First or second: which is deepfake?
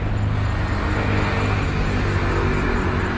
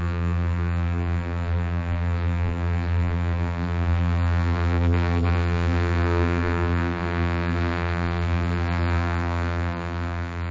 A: second